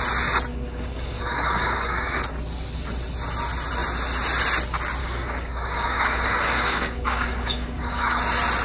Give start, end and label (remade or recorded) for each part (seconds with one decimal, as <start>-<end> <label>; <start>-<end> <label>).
0.0-0.5 recorded; 0.5-2.2 remade; 2.2-5.0 recorded; 5.0-8.2 remade; 8.2-8.6 recorded